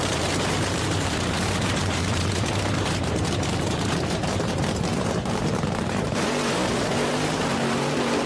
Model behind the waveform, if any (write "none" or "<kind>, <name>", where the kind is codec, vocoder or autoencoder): vocoder, BigVGAN v2